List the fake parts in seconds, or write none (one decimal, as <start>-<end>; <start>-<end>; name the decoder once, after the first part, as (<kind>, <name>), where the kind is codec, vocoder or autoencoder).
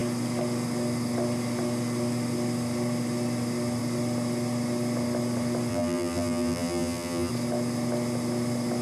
5.7-7.3 (vocoder, BigVGAN v2)